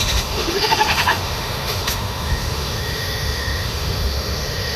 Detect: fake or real fake